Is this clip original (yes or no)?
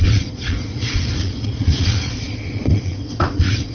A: no